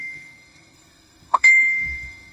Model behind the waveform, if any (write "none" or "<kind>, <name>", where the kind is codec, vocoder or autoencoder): codec, SNAC